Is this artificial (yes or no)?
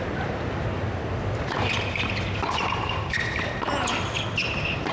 no